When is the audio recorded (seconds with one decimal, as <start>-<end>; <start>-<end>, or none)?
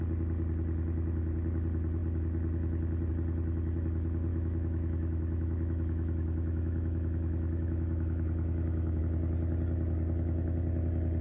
0.0-4.3; 9.0-11.2